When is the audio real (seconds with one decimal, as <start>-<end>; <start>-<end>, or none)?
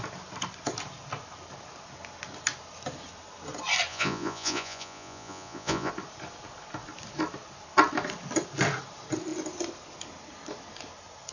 0.0-3.9; 5.9-11.3